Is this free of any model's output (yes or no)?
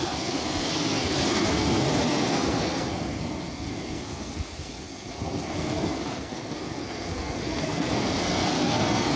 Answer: no